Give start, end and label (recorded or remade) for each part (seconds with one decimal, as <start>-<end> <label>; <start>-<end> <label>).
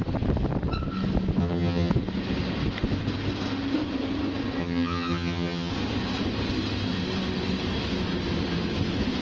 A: 0.0-1.4 recorded; 1.4-1.9 remade; 1.9-4.6 recorded; 4.6-5.7 remade; 5.7-9.2 recorded